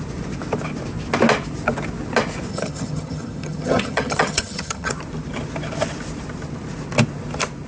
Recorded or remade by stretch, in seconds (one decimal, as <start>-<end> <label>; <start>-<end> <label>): 0.0-2.5 recorded; 2.5-4.9 remade; 4.9-7.7 recorded